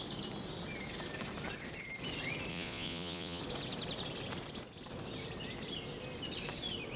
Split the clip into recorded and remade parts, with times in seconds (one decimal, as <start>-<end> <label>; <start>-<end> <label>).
0.0-2.5 recorded; 2.5-3.4 remade; 3.4-7.0 recorded